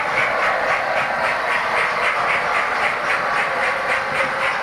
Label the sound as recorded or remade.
recorded